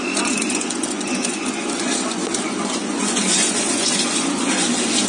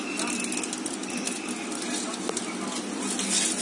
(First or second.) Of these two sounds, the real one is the second